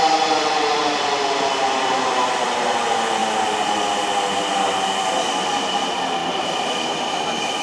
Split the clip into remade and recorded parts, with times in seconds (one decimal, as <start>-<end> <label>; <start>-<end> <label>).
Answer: 0.0-6.2 recorded; 6.2-7.0 remade; 7.0-7.6 recorded